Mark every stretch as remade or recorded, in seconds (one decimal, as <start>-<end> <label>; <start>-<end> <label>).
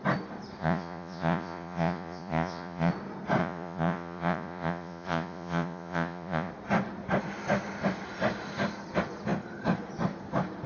0.0-0.6 recorded; 0.6-2.9 remade; 2.9-3.4 recorded; 3.4-6.5 remade; 6.5-10.7 recorded